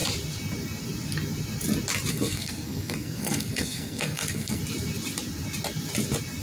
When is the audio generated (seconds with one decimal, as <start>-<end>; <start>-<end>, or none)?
2.1-4.6